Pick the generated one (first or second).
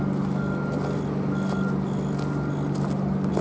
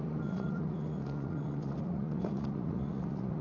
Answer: second